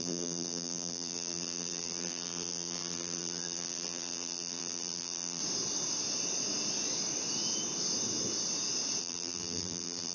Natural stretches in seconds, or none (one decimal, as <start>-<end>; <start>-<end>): 5.4-9.0